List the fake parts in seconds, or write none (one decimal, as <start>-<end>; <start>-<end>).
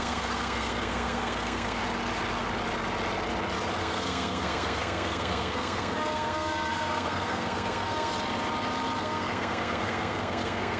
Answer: 0.0-1.8; 3.8-8.1; 9.0-10.8